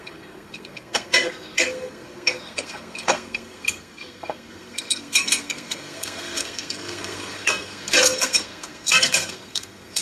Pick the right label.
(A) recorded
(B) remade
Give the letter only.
B